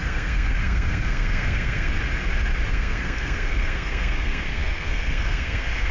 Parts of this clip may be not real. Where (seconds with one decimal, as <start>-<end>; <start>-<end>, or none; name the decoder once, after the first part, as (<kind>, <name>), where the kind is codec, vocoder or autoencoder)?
0.0-1.9 (codec, SNAC); 2.7-5.9